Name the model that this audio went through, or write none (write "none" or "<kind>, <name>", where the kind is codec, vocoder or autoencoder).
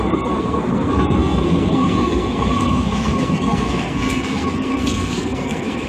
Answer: codec, SNAC